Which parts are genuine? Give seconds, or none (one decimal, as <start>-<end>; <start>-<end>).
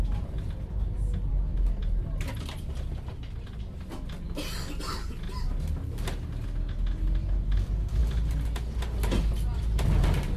0.0-10.4